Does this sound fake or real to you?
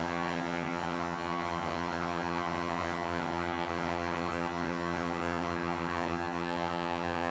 fake